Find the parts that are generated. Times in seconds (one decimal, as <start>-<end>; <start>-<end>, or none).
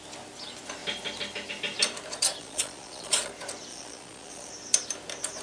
2.4-3.3; 3.7-4.5